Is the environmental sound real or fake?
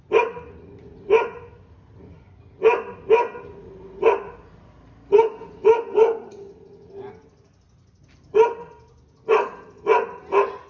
real